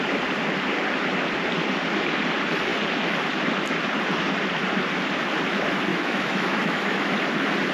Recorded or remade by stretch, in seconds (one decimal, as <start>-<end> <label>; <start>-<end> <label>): 0.0-5.9 recorded; 5.9-7.1 remade; 7.1-7.7 recorded